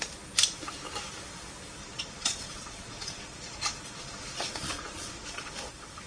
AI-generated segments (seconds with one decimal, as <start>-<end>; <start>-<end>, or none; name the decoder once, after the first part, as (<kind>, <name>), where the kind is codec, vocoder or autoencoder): 1.8-5.5 (vocoder, Vocos)